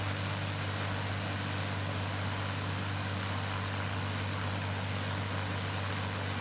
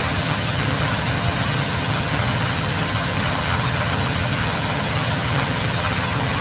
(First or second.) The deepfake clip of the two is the second